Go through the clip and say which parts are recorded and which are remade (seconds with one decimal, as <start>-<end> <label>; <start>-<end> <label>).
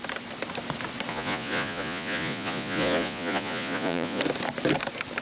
0.0-1.1 recorded; 1.1-4.2 remade; 4.2-5.2 recorded